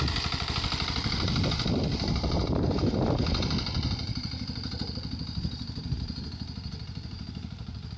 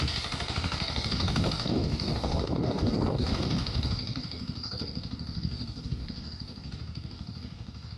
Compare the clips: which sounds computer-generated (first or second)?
second